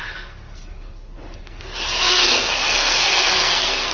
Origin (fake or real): fake